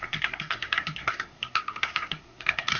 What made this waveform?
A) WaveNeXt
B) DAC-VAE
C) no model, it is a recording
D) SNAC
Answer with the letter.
D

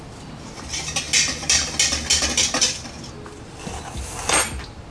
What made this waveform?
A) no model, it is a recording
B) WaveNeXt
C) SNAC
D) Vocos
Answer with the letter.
A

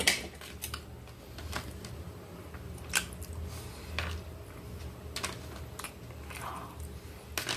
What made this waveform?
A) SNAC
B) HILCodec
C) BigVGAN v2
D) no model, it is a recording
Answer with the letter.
D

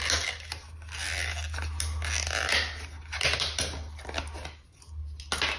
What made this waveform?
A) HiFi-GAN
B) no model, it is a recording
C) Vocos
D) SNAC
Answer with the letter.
B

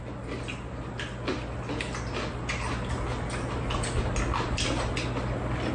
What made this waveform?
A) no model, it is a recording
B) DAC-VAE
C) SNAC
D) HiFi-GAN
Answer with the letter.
A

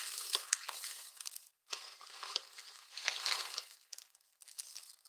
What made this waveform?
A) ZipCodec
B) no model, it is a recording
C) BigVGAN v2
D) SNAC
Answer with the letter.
D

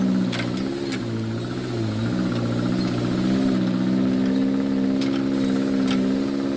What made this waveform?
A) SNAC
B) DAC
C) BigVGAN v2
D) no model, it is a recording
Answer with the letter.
D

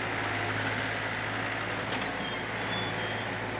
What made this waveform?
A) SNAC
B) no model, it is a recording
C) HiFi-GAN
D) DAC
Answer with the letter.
B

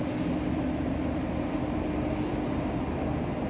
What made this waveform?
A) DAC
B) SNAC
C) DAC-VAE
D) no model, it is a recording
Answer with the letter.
D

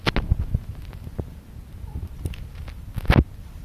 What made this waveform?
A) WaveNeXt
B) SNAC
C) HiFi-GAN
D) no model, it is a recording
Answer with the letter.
D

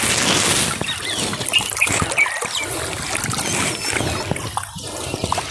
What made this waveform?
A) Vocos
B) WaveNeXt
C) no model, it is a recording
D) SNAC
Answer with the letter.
C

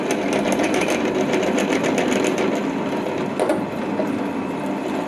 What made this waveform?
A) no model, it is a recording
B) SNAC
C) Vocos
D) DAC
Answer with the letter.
A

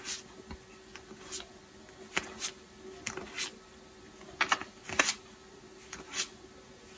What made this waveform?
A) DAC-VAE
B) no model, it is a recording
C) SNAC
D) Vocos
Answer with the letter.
B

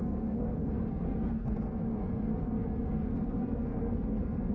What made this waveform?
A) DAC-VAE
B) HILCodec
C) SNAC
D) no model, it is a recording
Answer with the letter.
C